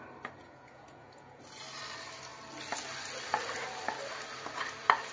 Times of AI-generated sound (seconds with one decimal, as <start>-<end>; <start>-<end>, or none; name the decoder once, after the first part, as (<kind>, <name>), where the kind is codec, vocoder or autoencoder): 0.4-1.4 (vocoder, Vocos)